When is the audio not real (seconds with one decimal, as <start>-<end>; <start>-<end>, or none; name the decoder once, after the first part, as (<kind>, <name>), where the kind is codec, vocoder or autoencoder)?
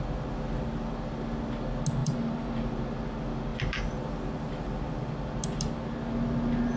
2.0-2.7 (vocoder, BigVGAN v2)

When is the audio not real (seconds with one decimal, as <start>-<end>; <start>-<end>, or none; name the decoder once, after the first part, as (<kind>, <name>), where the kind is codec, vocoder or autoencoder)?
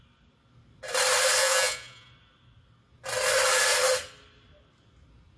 1.4-2.1 (vocoder, Vocos)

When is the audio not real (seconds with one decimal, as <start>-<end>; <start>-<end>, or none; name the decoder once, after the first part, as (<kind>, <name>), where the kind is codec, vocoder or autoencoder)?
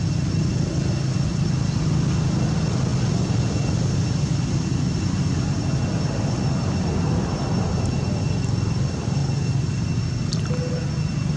none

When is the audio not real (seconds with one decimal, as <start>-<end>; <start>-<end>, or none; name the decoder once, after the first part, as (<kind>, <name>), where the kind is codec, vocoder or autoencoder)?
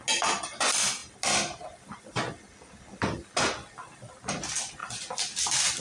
4.8-5.8 (vocoder, BigVGAN v2)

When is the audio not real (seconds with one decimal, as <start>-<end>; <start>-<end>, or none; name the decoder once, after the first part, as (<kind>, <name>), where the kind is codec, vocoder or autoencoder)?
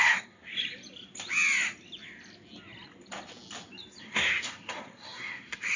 0.0-0.5 (codec, SNAC); 4.0-5.8